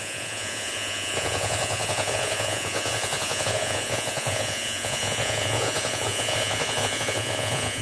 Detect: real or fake fake